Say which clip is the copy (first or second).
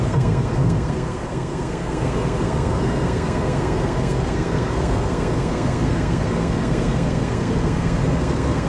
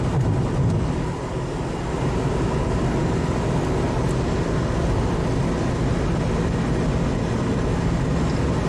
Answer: first